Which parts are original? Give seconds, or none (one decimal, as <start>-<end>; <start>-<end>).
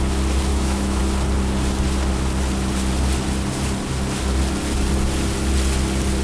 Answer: 0.0-0.5; 1.0-6.2